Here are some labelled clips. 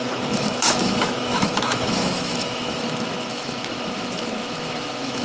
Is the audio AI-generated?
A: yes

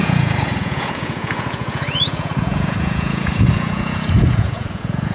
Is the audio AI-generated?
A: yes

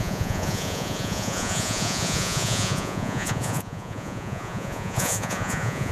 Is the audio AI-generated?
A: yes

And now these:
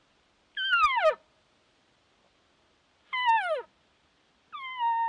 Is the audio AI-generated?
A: no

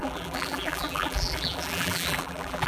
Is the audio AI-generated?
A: yes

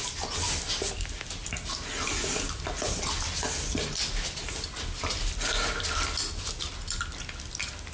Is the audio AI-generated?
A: no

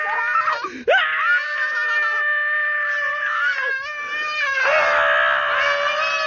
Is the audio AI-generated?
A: no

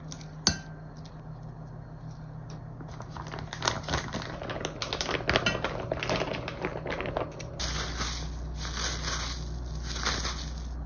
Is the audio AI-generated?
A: no